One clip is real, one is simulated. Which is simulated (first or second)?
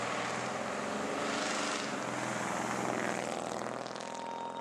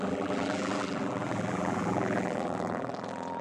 second